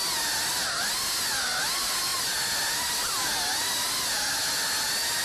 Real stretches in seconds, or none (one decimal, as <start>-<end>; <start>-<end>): 0.0-5.2